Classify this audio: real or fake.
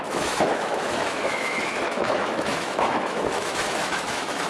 fake